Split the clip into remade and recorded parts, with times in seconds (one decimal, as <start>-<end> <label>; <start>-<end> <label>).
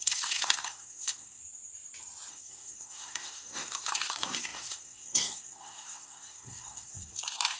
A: 0.0-1.4 remade; 1.4-2.3 recorded; 2.3-7.6 remade